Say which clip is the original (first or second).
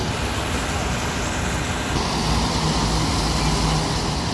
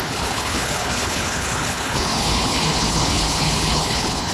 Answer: first